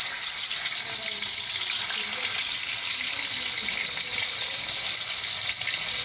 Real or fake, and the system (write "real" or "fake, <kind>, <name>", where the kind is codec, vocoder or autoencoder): real